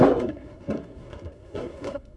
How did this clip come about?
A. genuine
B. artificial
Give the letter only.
B